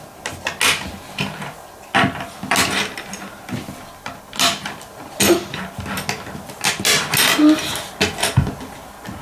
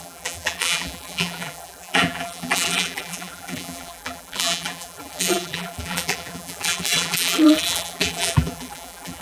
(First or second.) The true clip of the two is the first